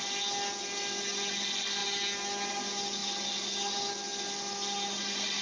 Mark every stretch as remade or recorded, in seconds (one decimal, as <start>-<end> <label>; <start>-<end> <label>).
0.0-5.4 recorded